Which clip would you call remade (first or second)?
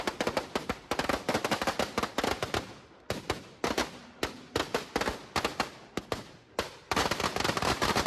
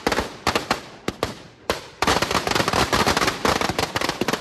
second